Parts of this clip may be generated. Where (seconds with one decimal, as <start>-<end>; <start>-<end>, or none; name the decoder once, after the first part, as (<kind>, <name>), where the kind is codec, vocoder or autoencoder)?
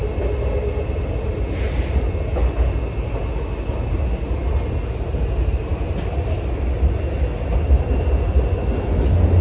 none